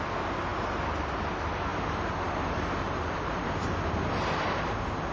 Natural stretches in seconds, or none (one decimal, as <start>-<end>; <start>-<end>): 0.0-5.1